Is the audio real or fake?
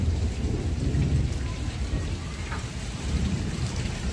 fake